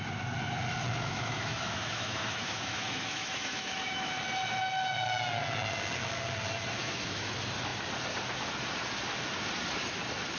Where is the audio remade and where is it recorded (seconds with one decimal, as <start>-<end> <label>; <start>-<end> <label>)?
0.0-0.9 recorded; 0.9-4.1 remade; 4.1-6.8 recorded; 6.8-7.3 remade; 7.3-10.4 recorded